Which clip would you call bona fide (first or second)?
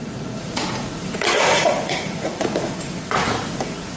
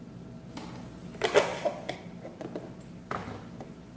second